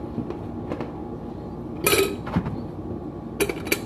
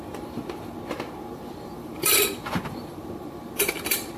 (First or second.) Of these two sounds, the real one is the first